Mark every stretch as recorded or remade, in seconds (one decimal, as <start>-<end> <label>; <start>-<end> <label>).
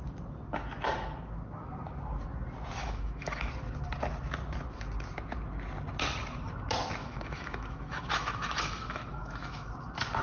0.0-2.8 recorded; 2.8-3.5 remade; 3.5-7.0 recorded; 7.0-9.7 remade; 9.7-10.2 recorded